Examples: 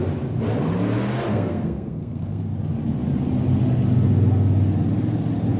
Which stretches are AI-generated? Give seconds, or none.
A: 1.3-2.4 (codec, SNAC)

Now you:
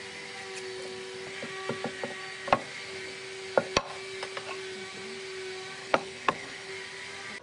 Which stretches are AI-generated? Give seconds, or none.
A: 5.8-6.7 (codec, HILCodec)

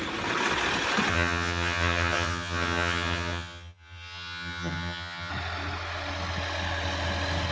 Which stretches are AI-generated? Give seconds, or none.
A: 1.1-5.3 (vocoder, HiFi-GAN)